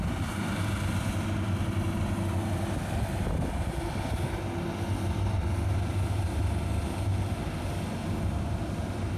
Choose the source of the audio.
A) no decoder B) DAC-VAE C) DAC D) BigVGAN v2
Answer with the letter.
A